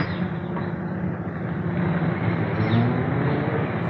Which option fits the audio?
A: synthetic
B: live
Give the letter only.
B